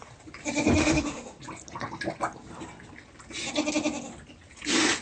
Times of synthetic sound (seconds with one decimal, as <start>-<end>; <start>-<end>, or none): 0.8-1.4